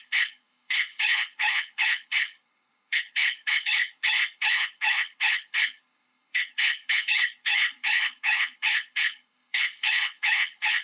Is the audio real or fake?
fake